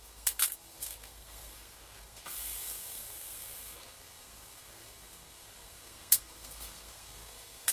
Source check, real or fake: fake